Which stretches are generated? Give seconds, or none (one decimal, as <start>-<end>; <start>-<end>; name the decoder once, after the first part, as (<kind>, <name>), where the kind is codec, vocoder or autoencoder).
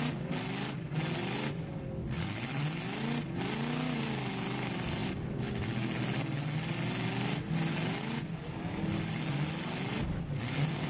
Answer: none